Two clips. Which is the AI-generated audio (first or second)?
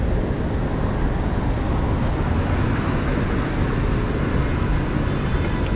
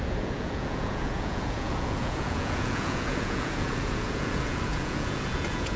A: second